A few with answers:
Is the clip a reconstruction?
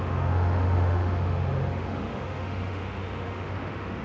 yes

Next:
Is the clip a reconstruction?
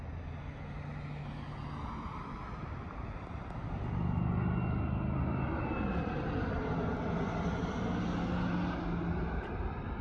no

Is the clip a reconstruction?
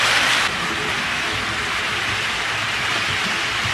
no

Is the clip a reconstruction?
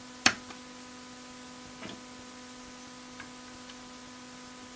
no